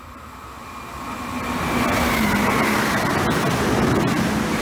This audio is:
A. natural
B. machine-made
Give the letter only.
A